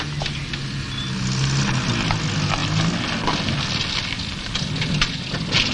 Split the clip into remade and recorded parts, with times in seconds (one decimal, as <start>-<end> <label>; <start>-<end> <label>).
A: 0.0-5.7 recorded